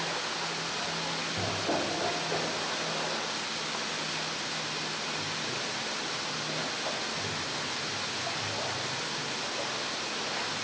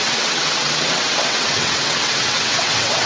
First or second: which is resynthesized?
second